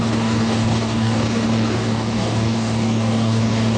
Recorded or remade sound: remade